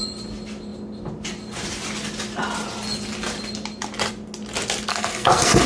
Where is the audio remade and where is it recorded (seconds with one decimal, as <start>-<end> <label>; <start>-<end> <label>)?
0.0-4.9 recorded; 4.9-5.7 remade